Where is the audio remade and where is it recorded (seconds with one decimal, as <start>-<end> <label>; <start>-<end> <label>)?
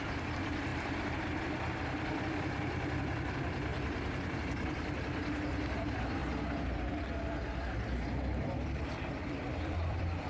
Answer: 0.0-0.7 remade; 0.7-1.7 recorded; 1.7-3.7 remade; 3.7-4.4 recorded; 4.4-6.2 remade; 6.2-9.5 recorded; 9.5-10.3 remade